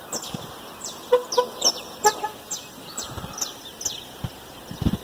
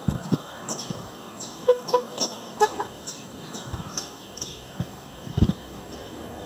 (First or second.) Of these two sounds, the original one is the first